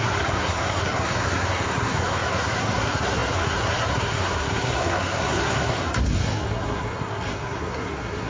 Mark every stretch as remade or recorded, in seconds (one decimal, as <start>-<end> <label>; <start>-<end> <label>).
0.0-8.3 remade